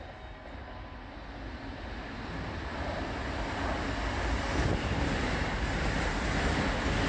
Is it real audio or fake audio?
real